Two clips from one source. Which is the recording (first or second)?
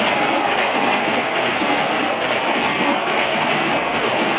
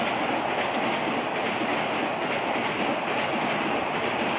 second